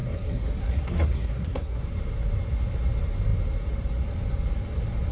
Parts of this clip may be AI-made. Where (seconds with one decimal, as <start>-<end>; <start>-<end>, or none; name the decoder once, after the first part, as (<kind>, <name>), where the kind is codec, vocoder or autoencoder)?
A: 0.0-1.8 (codec, SNAC)